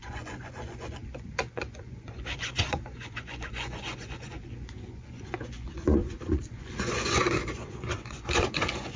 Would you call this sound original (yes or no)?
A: no